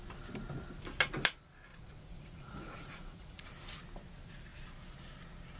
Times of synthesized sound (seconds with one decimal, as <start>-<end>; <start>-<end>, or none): 1.7-3.5